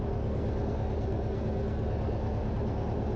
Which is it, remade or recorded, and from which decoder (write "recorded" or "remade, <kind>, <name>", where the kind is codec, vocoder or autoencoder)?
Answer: remade, codec, SNAC